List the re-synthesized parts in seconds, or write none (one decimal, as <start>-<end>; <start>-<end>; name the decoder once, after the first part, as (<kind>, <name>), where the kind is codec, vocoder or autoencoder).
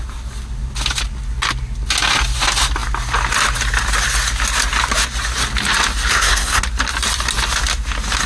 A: 6.1-6.6 (codec, SNAC)